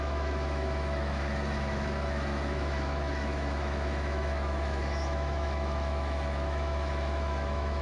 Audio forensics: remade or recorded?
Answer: remade